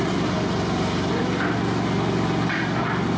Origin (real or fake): real